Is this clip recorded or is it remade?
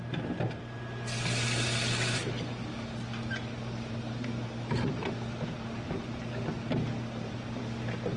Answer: recorded